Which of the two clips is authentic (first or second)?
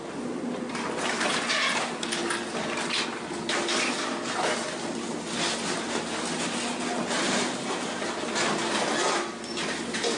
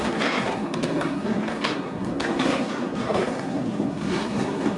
first